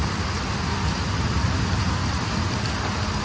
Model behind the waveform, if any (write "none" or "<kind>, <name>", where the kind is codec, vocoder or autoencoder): none